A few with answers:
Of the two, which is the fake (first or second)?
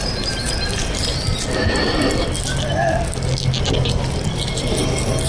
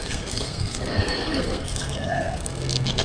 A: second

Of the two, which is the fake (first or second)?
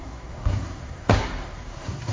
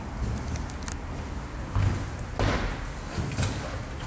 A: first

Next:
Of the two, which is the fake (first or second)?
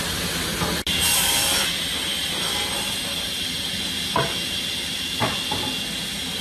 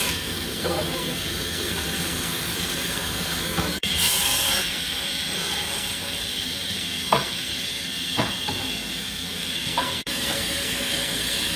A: second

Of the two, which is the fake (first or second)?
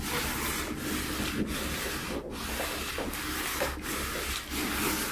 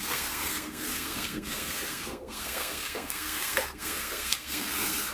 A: second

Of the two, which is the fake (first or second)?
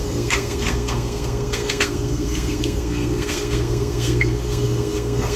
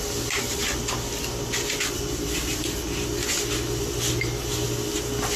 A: first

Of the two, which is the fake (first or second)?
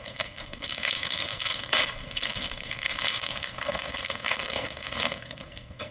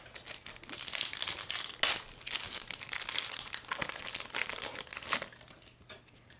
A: first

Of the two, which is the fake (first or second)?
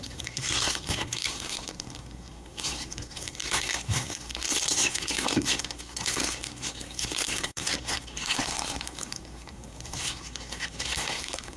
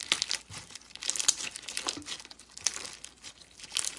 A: first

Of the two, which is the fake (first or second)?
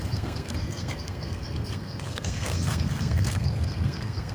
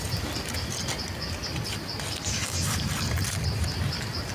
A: first